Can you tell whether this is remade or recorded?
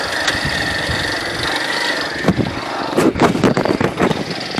recorded